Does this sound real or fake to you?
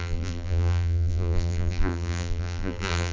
fake